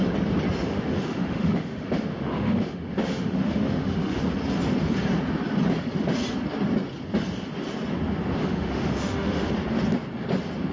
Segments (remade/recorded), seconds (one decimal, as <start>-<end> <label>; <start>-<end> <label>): 0.0-0.7 recorded; 0.7-4.2 remade; 4.2-8.4 recorded; 8.4-9.5 remade; 9.5-10.7 recorded